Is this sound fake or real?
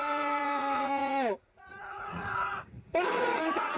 fake